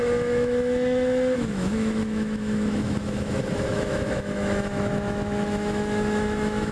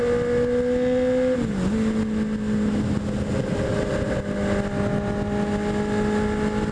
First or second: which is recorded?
second